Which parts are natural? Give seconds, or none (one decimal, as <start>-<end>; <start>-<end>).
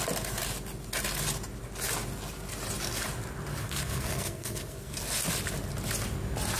0.0-3.6; 5.0-6.6